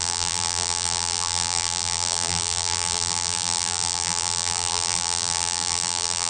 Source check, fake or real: fake